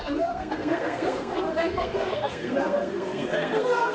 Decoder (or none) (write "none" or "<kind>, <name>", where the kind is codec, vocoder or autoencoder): codec, SNAC